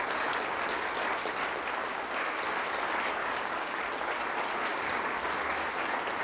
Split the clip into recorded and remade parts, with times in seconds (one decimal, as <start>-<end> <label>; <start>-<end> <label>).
0.0-1.9 recorded; 1.9-2.4 remade; 2.4-3.2 recorded; 3.2-3.8 remade; 3.8-4.7 recorded; 4.7-5.4 remade; 5.4-6.2 recorded